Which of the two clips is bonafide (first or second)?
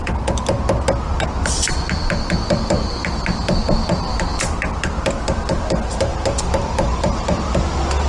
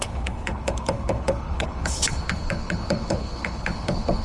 first